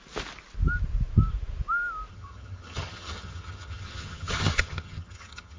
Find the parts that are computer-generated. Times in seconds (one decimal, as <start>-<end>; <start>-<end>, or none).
2.1-5.6